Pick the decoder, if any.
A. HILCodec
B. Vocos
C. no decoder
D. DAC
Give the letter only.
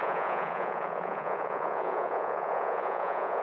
B